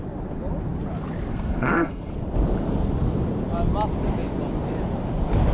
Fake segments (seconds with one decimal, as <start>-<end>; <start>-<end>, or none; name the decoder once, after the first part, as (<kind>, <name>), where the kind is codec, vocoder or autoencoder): 1.3-2.1 (codec, SNAC)